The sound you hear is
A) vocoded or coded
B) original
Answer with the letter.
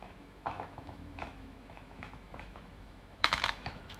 A